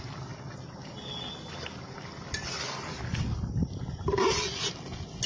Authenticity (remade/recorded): recorded